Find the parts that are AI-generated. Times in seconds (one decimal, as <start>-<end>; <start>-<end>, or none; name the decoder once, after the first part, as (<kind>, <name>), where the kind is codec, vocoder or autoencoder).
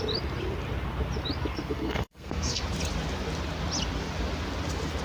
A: 1.5-2.6 (codec, SNAC)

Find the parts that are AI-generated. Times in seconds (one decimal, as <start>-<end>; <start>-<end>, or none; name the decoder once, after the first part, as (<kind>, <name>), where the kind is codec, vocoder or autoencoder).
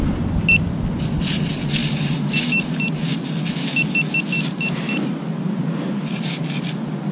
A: none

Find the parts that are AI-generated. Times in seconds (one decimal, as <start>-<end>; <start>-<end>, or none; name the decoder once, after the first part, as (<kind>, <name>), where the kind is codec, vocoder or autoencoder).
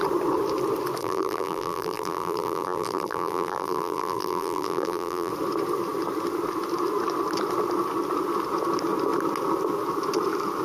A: 1.0-5.3 (vocoder, BigVGAN v2)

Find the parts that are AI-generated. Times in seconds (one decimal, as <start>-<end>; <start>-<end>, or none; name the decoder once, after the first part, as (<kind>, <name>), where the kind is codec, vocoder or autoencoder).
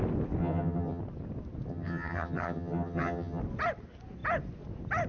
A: 0.4-1.0 (vocoder, HiFi-GAN); 1.7-3.4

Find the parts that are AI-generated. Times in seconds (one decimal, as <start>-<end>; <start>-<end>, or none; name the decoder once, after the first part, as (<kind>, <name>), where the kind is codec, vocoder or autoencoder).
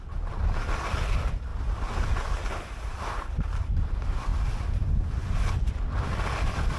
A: none